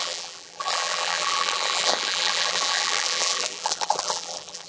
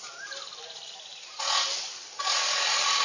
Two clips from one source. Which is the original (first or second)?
second